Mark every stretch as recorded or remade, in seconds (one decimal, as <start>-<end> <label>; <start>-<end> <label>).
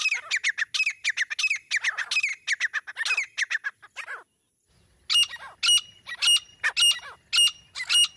0.0-8.2 recorded